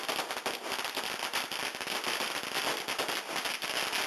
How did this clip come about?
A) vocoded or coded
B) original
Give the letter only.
B